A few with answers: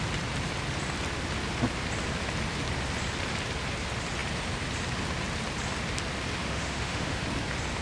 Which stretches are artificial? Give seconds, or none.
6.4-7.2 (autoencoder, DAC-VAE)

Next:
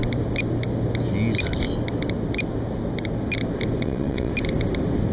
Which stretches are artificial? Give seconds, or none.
3.8-4.3 (vocoder, WaveNeXt)

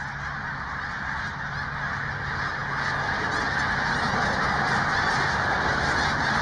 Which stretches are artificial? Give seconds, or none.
none

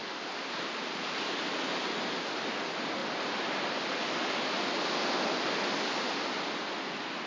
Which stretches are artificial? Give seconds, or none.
none

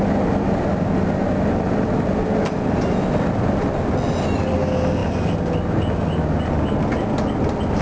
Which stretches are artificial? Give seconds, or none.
none

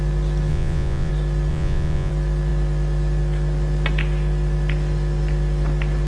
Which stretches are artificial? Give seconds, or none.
0.5-1.1 (vocoder, Vocos); 1.5-2.1

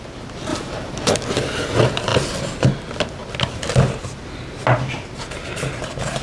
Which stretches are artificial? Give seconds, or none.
0.5-1.1 (vocoder, BigVGAN v2)

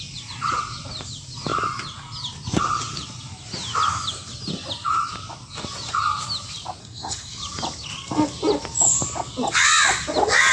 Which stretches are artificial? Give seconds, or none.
6.8-7.4 (codec, SNAC)